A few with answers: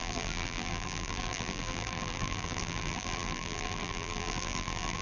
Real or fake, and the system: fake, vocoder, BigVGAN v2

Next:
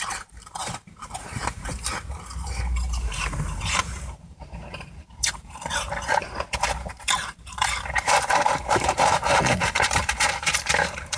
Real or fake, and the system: fake, vocoder, BigVGAN v2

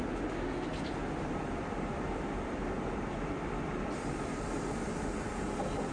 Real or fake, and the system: fake, vocoder, BigVGAN v2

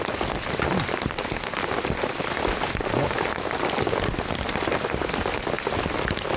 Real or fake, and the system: fake, vocoder, BigVGAN v2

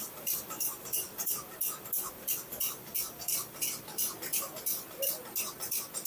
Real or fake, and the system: real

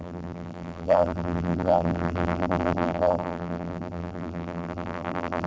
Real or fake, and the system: fake, vocoder, BigVGAN v2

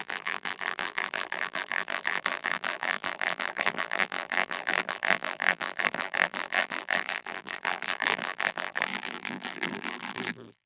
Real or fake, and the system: fake, vocoder, BigVGAN v2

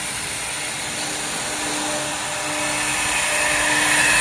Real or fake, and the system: real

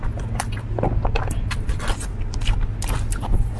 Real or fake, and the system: real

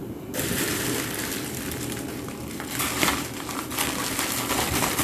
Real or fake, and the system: fake, vocoder, BigVGAN v2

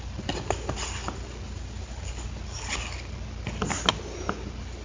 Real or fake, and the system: real